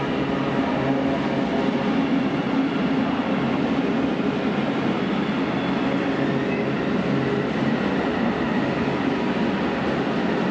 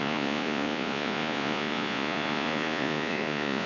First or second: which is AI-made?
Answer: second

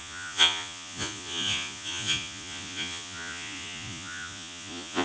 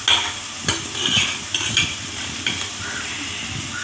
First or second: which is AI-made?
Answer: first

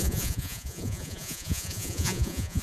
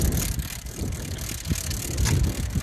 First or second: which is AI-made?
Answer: first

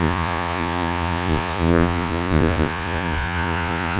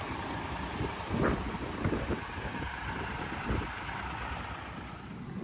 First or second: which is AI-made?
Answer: first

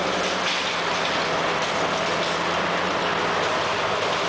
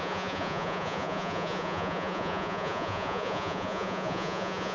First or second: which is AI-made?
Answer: second